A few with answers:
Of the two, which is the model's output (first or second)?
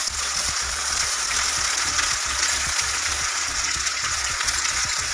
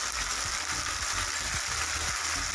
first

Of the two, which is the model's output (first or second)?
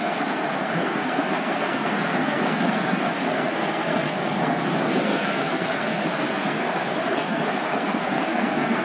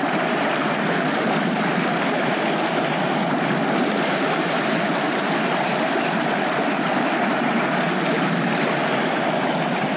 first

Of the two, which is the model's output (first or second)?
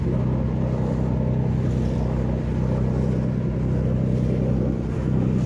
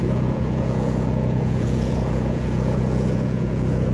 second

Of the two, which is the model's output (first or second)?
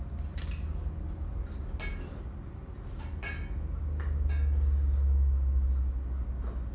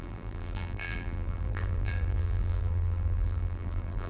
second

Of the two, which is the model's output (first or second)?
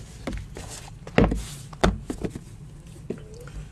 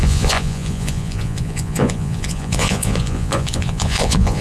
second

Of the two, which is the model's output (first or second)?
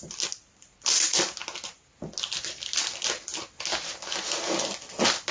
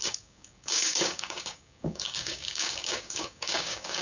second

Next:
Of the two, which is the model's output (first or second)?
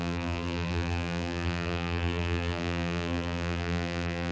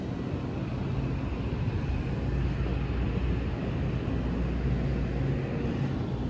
first